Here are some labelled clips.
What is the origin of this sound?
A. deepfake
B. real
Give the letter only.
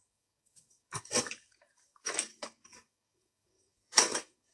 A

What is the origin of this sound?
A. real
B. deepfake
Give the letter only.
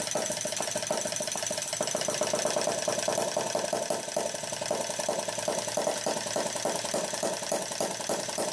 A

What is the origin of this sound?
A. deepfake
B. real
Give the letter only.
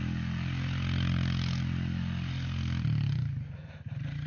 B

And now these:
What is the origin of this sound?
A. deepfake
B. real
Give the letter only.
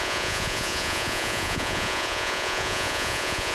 A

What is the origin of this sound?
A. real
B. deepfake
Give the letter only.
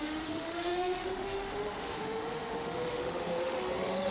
B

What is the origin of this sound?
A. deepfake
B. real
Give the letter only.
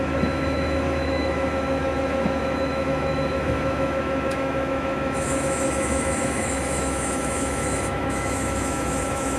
A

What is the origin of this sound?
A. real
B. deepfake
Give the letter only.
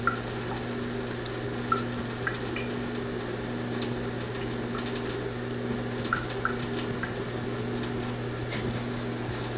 A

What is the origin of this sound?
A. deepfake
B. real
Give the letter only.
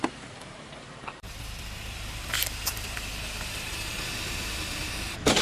A